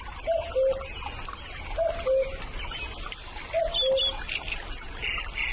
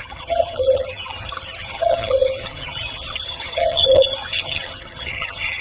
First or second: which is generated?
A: second